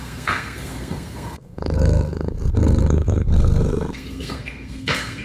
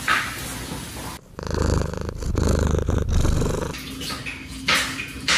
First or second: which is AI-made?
first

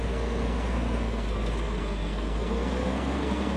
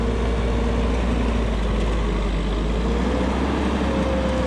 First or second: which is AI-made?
first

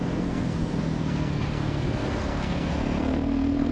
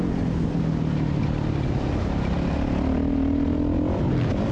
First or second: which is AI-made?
first